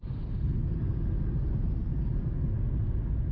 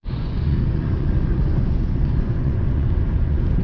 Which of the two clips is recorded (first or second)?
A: first